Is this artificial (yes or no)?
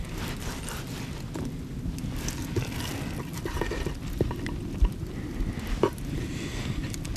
no